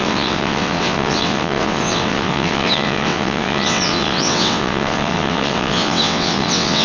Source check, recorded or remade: remade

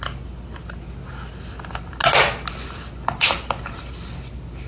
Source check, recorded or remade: recorded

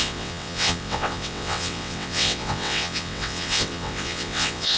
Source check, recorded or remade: remade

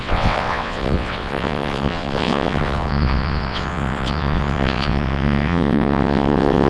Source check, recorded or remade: remade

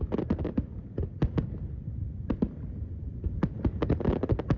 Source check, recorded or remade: recorded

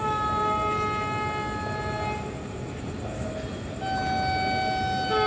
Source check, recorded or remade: recorded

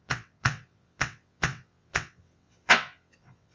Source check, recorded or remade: remade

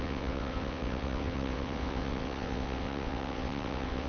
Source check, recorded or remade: remade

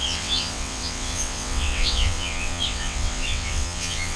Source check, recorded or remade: remade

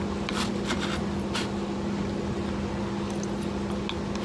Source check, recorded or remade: recorded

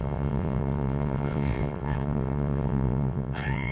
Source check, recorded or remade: remade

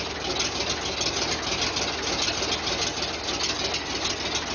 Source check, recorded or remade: recorded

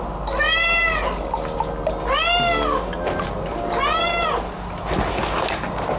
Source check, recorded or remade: recorded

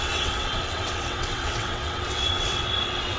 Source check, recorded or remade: remade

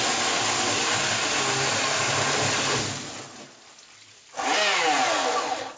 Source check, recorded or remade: recorded